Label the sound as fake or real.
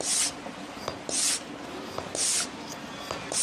real